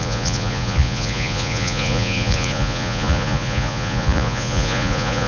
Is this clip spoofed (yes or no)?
yes